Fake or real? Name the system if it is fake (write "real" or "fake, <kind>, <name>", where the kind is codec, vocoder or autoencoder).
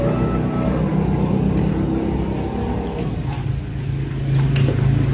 real